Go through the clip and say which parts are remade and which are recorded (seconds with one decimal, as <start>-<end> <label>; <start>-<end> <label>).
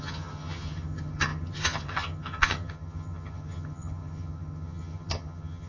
0.0-5.7 remade